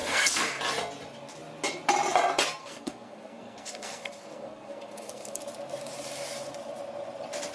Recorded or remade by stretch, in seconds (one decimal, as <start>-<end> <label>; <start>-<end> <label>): 0.0-0.6 remade; 0.6-2.6 recorded; 2.6-5.4 remade; 5.4-7.5 recorded